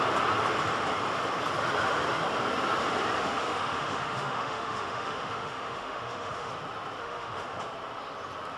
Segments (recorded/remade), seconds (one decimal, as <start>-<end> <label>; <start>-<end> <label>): 0.0-3.2 recorded; 3.2-6.5 remade; 6.5-7.0 recorded; 7.0-7.6 remade; 7.6-8.6 recorded